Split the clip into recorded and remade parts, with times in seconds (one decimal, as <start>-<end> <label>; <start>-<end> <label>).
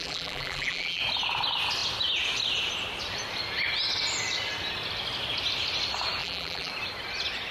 0.0-1.0 remade; 1.0-6.2 recorded; 6.2-6.7 remade; 6.7-7.5 recorded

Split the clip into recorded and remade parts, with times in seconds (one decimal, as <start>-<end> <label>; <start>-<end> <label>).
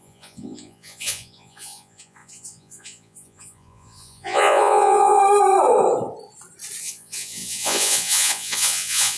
0.0-5.2 remade; 5.2-6.8 recorded; 6.8-9.2 remade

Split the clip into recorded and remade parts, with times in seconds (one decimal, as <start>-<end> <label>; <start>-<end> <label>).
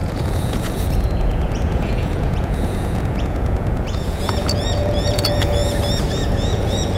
0.0-5.6 remade; 5.6-6.1 recorded; 6.1-7.0 remade